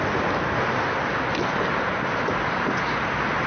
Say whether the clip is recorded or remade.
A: recorded